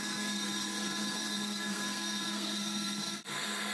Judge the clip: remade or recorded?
remade